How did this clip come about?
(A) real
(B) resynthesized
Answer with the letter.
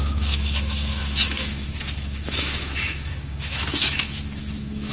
B